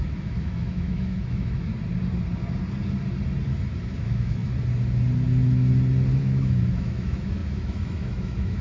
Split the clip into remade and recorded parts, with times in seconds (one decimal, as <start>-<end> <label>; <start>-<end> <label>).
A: 0.0-1.7 remade; 1.7-3.8 recorded; 3.8-4.4 remade; 4.4-6.2 recorded; 6.2-8.6 remade